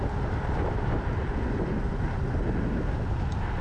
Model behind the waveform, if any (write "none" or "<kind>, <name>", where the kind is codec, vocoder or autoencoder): none